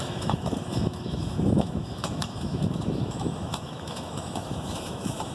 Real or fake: fake